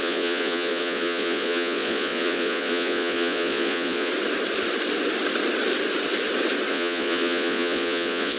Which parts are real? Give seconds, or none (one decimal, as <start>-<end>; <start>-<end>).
4.1-6.7